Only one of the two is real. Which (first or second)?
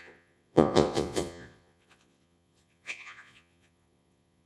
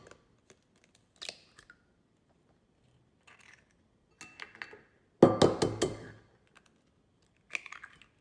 second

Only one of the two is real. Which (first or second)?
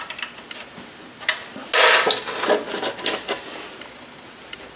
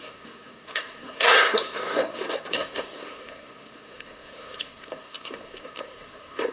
first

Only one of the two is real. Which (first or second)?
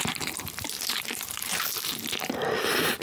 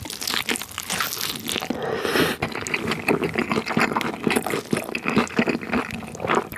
second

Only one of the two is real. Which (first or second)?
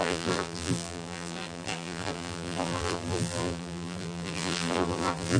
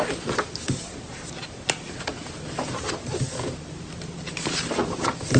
second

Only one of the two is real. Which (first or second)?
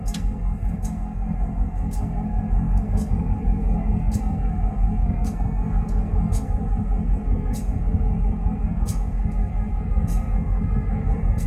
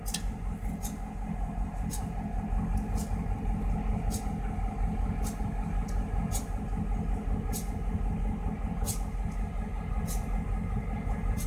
second